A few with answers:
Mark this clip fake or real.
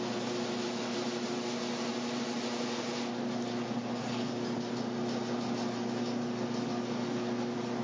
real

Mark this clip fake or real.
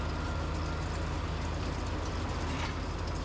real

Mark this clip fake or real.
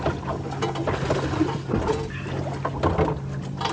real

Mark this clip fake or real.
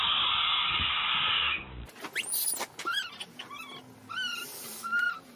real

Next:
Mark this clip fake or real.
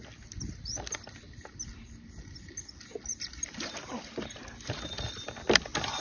real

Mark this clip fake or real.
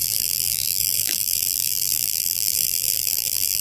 fake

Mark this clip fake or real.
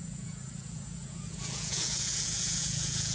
fake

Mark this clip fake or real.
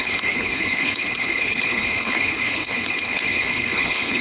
fake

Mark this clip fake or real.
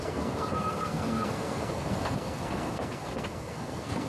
fake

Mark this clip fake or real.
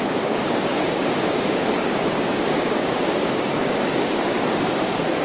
fake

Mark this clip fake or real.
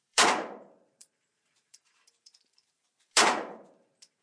fake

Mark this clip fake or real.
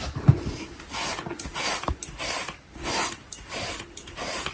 real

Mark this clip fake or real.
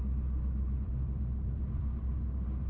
fake